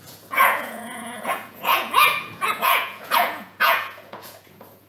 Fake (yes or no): yes